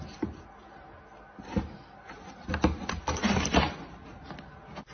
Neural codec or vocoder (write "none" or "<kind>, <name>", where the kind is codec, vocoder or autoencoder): none